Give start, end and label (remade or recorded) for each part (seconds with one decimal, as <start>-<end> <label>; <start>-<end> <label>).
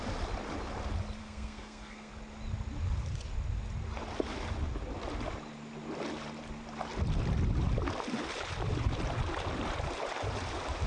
0.0-1.2 recorded; 1.2-2.1 remade; 2.1-10.9 recorded